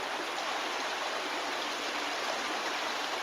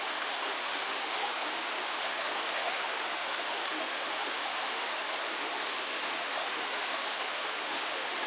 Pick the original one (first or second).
first